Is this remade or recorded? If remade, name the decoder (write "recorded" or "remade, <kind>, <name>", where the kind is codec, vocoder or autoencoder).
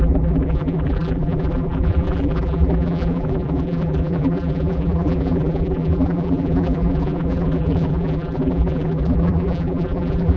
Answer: remade, vocoder, BigVGAN v2